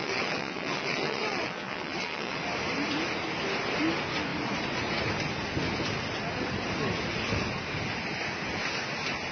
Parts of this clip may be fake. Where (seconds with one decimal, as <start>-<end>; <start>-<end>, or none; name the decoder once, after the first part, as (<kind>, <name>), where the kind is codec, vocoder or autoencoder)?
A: 0.0-2.4 (vocoder, WaveNeXt)